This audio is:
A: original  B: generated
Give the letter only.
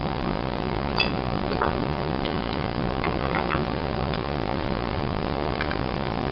B